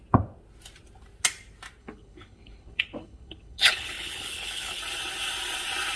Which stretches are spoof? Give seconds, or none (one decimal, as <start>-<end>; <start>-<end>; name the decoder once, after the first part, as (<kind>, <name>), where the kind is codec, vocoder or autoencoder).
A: 1.8-4.8 (codec, HILCodec)